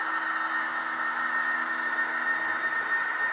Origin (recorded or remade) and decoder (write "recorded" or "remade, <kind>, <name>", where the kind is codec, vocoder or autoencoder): recorded